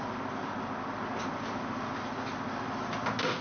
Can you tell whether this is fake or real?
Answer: real